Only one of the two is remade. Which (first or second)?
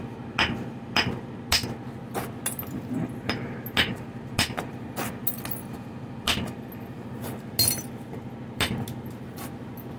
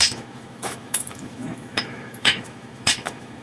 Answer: second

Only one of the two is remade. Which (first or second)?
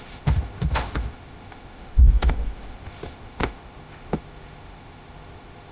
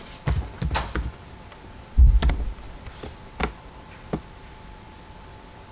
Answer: first